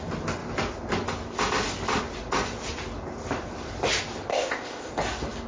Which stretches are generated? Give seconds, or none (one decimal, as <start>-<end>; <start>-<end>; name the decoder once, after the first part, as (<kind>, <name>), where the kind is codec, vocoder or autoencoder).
4.3-4.9 (codec, ZipCodec)